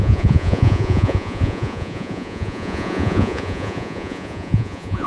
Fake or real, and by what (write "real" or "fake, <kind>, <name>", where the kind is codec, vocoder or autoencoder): fake, vocoder, Vocos